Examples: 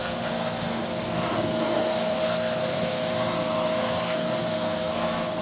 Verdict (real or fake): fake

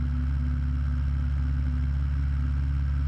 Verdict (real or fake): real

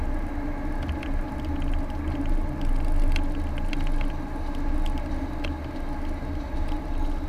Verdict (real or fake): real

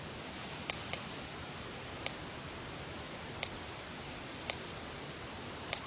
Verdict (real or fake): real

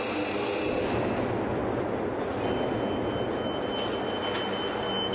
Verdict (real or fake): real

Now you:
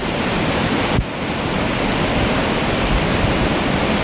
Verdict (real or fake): real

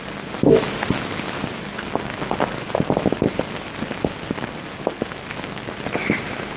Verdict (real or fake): real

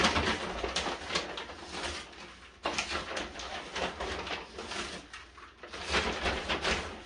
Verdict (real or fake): real